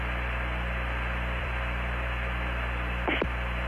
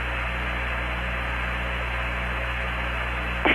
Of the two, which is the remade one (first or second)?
first